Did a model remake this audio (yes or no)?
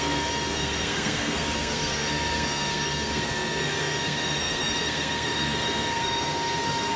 yes